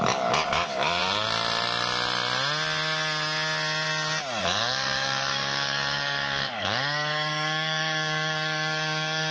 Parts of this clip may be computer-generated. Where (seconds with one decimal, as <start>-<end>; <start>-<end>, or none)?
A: 0.0-1.0; 4.4-9.3